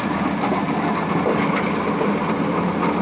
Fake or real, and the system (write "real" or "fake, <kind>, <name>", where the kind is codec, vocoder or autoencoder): real